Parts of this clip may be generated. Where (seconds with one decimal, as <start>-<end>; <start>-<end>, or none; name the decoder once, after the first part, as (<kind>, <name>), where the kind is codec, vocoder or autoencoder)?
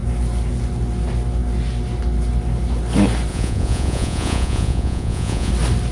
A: 3.3-5.5 (vocoder, Vocos)